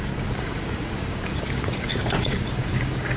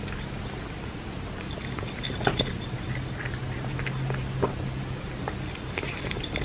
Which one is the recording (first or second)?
second